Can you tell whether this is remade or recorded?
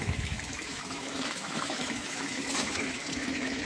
remade